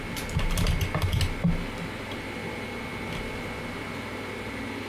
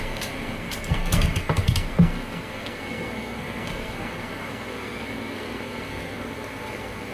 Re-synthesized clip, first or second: second